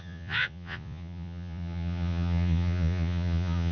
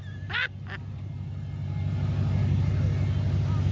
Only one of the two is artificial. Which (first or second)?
first